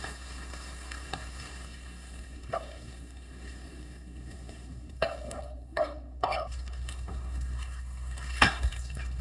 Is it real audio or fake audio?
fake